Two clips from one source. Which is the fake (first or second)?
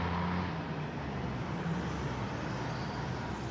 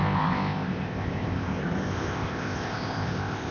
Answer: second